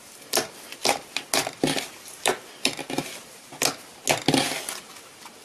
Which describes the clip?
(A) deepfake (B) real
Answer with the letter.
B